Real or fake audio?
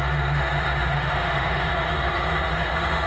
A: fake